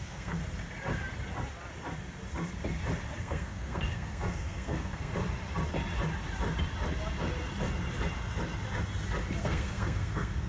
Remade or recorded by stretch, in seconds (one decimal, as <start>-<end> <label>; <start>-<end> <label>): 0.0-0.4 remade; 0.4-3.2 recorded; 3.2-5.1 remade; 5.1-9.4 recorded; 9.4-10.5 remade